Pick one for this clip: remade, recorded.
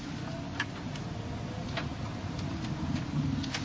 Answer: recorded